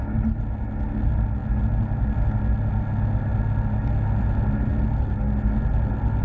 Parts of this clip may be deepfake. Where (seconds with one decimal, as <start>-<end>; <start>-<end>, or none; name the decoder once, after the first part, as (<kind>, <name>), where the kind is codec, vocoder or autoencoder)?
none